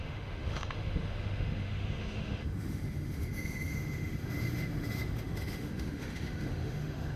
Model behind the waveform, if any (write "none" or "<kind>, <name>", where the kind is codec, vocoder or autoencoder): autoencoder, DAC-VAE